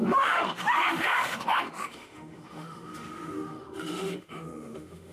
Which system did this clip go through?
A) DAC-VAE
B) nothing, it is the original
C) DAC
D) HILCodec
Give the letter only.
A